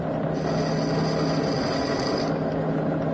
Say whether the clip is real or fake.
real